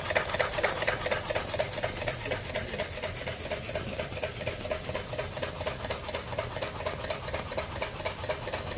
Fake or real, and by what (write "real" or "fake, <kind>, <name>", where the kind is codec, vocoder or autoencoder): real